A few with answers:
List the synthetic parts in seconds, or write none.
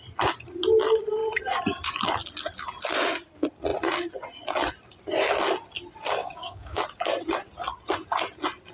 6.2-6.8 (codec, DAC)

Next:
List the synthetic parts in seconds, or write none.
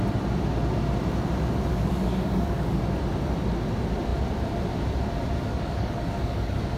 1.7-2.8 (codec, DAC); 5.5-6.8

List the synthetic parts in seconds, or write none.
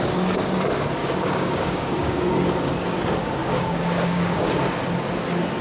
1.0-2.3 (codec, DAC); 3.4-4.6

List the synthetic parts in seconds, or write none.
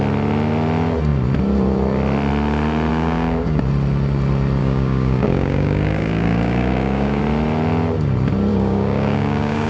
2.9-3.6 (codec, DAC); 4.6-7.2; 8.5-9.7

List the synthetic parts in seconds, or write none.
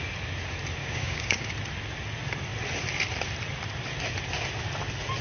0.8-1.5 (codec, DAC)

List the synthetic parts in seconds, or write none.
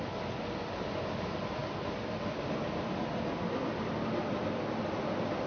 none